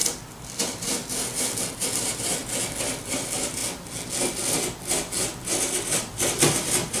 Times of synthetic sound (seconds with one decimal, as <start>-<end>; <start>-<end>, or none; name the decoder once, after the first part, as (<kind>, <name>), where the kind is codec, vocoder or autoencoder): 0.6-2.4 (vocoder, BigVGAN v2); 3.0-3.6; 5.5-7.0